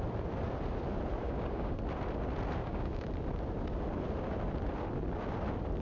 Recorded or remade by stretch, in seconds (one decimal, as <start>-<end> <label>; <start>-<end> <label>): 0.0-1.2 recorded; 1.2-1.8 remade; 1.8-2.6 recorded; 2.6-3.1 remade; 3.1-5.8 recorded